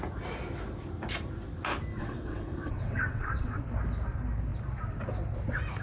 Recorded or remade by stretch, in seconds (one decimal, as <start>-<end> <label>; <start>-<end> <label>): 0.0-1.9 recorded; 1.9-3.6 remade; 3.6-5.8 recorded